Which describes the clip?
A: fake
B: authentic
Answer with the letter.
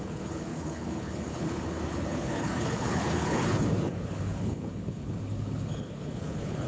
A